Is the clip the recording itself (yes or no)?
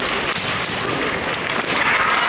yes